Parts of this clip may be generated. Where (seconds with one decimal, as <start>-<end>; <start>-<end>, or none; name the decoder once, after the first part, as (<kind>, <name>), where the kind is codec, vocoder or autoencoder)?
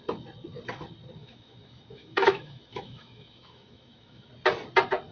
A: 1.2-4.3 (autoencoder, DAC-VAE)